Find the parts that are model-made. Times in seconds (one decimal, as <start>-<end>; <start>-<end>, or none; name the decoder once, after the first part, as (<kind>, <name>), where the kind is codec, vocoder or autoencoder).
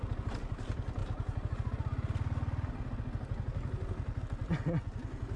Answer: none